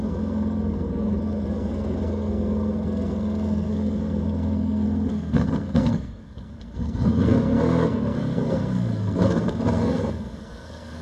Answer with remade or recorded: remade